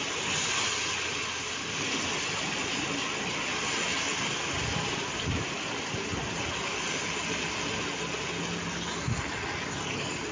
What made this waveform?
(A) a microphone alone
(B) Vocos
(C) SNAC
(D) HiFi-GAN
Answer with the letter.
A